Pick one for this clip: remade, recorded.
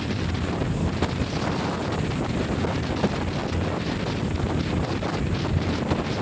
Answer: recorded